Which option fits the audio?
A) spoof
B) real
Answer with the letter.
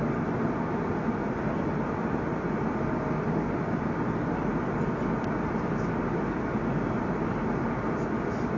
B